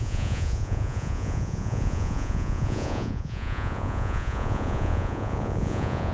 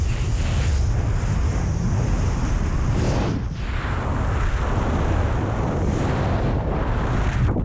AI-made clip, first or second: first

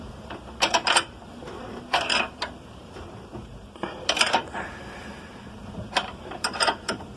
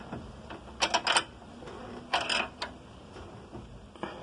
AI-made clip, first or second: first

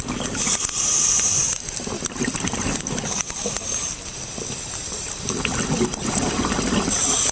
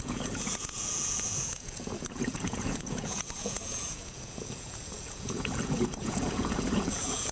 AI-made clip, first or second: second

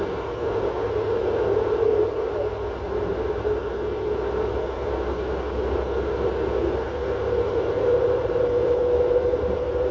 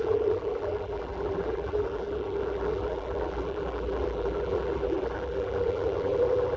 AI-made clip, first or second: second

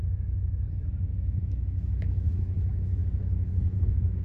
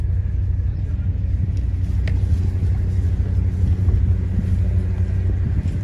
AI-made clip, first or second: first